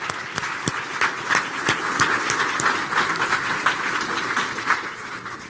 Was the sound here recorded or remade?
recorded